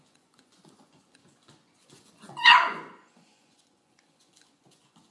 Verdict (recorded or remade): remade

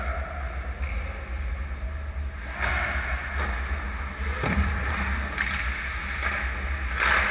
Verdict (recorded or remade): recorded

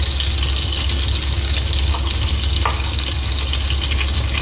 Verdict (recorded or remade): recorded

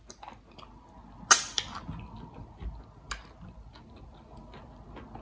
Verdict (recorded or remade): recorded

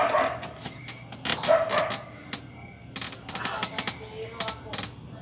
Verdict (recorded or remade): recorded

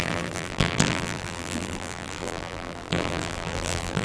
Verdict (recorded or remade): remade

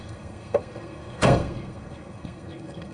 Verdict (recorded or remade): remade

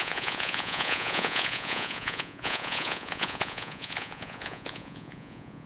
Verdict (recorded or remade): remade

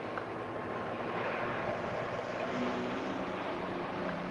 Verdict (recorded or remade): remade